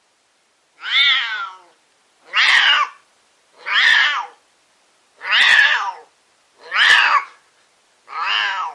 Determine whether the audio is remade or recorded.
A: recorded